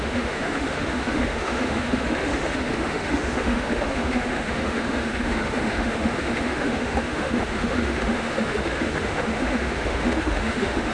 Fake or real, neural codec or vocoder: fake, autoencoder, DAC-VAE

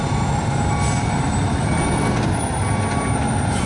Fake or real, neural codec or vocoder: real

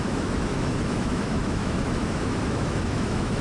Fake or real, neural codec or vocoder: fake, autoencoder, DAC-VAE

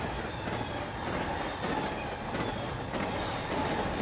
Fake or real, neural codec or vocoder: real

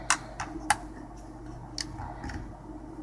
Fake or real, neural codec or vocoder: real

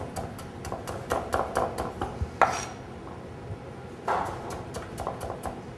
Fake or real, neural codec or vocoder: real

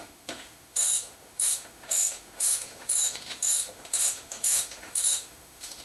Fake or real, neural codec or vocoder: fake, autoencoder, DAC-VAE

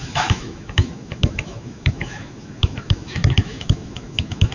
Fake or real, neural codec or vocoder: fake, autoencoder, DAC-VAE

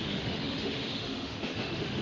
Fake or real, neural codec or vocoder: fake, autoencoder, DAC-VAE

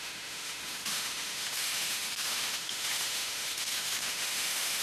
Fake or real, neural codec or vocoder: fake, autoencoder, DAC-VAE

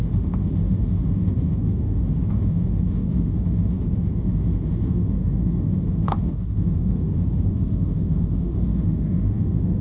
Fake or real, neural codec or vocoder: fake, autoencoder, DAC-VAE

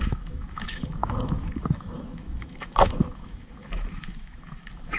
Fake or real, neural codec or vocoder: fake, autoencoder, DAC-VAE